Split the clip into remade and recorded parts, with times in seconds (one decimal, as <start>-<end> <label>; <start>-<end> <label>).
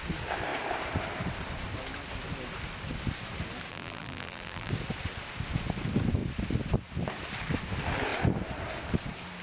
0.0-3.7 recorded; 3.7-4.7 remade; 4.7-9.4 recorded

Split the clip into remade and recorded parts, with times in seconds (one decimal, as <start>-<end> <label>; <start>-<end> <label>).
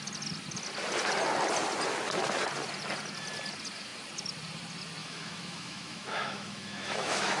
0.0-5.0 recorded; 5.0-7.4 remade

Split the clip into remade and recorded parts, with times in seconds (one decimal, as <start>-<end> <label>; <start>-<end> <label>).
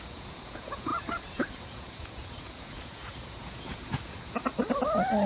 0.0-4.5 remade; 4.5-5.3 recorded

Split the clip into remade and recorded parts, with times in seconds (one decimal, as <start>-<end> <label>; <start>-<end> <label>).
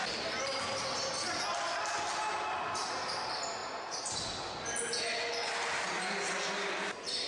0.0-7.3 recorded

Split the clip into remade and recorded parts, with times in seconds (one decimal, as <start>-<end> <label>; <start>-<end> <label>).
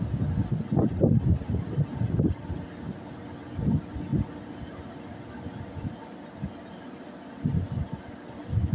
0.0-8.7 recorded